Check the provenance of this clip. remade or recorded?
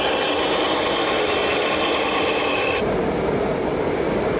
recorded